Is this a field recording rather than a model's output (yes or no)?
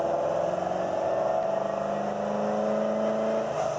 yes